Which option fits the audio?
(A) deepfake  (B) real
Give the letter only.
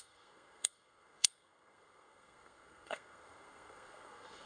A